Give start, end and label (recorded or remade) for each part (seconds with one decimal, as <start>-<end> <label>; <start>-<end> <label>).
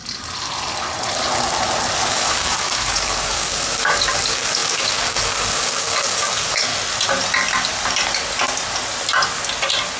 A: 0.0-2.1 recorded; 2.1-6.7 remade; 6.7-10.0 recorded